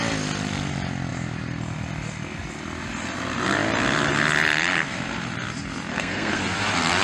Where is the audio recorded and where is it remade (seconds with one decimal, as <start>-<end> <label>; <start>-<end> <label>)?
0.0-5.9 recorded; 5.9-6.4 remade; 6.4-7.0 recorded